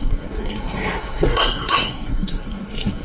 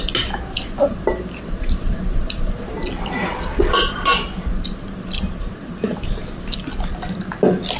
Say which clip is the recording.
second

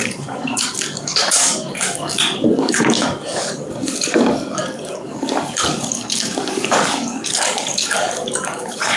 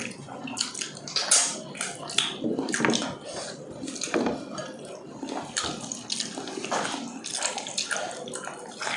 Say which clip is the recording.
second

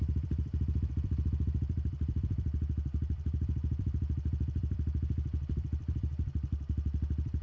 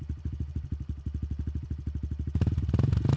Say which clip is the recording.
second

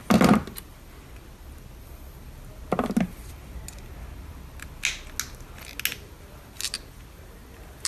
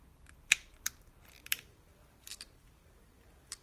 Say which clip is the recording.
first